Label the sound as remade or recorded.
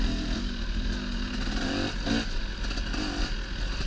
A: recorded